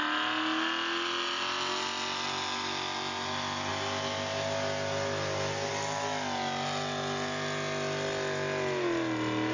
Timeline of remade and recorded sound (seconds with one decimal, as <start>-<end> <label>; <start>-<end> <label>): 0.0-9.5 recorded